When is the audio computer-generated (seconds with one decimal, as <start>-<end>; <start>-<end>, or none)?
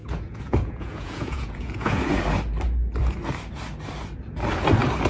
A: 0.0-2.0